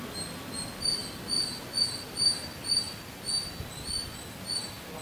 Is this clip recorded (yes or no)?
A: yes